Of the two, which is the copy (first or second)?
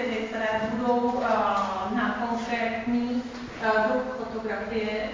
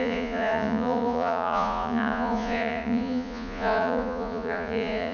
second